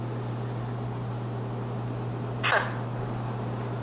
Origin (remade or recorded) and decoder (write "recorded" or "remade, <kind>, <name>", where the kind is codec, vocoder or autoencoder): remade, vocoder, BigVGAN v2